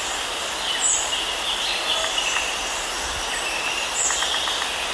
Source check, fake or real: real